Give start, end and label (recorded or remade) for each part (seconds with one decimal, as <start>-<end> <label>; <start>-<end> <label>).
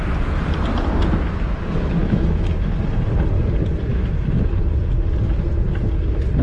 0.0-2.0 recorded; 2.0-2.7 remade; 2.7-3.9 recorded; 3.9-4.5 remade; 4.5-6.4 recorded